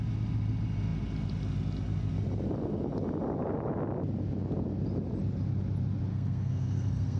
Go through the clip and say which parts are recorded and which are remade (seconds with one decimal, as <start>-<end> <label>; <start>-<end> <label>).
0.0-6.1 recorded; 6.1-7.2 remade